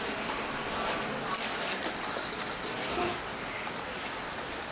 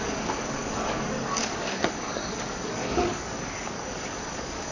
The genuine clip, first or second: first